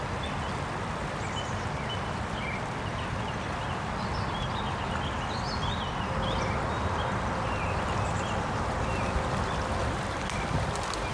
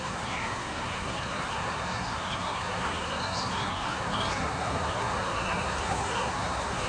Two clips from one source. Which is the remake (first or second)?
second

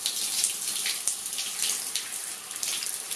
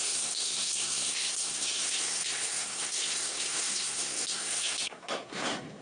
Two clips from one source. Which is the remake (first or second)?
second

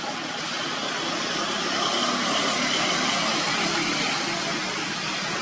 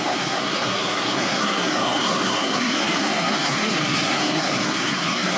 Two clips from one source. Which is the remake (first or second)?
second